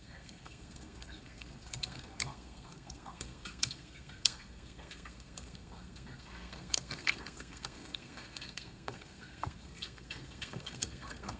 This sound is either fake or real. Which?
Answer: fake